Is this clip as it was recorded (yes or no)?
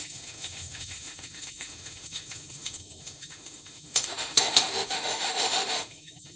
no